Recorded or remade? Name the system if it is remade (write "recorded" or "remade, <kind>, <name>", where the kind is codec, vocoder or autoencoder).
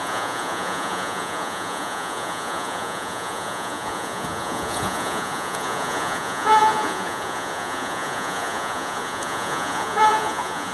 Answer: remade, vocoder, Vocos